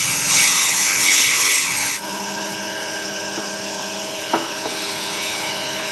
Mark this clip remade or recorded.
remade